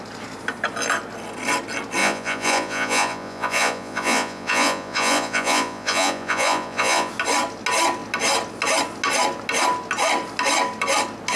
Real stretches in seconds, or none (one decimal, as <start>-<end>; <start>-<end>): 0.0-2.0; 7.1-11.4

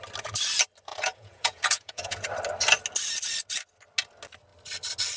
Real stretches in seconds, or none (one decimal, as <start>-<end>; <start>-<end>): 0.0-0.9; 2.3-5.2

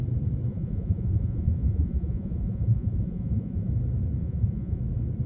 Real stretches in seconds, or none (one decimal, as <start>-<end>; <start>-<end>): 0.0-0.5; 3.7-4.2; 4.8-5.3

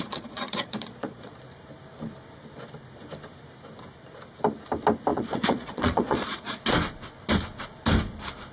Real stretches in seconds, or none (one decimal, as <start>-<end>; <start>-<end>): 1.4-5.1; 6.6-8.5

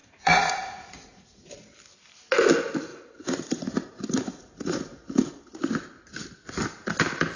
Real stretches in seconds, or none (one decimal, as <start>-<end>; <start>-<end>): 1.5-2.9; 5.4-7.4